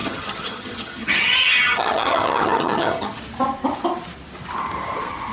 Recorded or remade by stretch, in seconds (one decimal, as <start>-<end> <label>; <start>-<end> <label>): 0.0-3.2 remade; 3.2-5.3 recorded